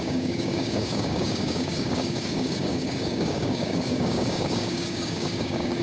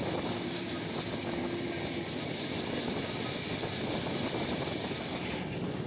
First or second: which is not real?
first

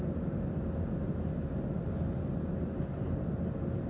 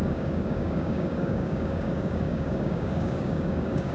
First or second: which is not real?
second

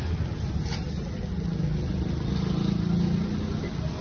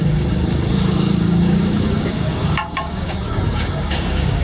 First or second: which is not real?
second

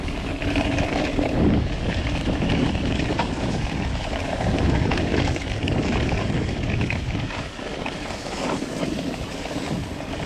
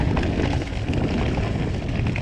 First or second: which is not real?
first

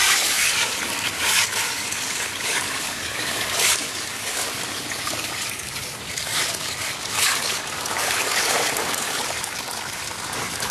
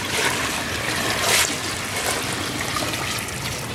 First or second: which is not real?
first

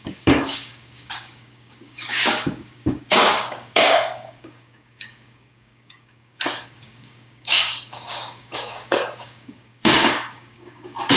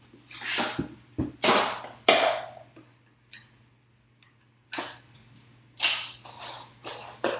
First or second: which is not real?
first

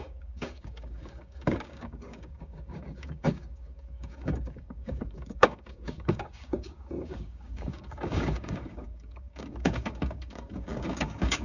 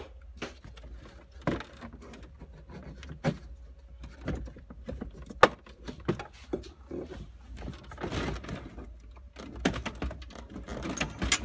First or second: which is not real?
first